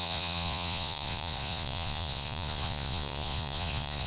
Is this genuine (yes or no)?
no